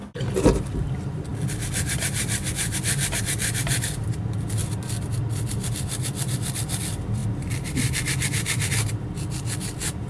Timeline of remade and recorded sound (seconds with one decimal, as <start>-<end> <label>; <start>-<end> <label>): 0.0-1.3 remade; 1.3-1.9 recorded; 1.9-10.1 remade